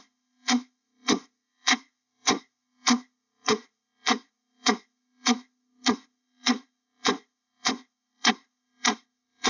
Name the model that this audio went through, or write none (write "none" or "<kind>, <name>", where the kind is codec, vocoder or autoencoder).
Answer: codec, ZipCodec